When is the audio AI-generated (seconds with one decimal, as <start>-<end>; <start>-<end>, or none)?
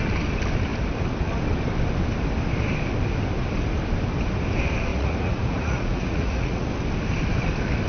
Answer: 4.9-6.7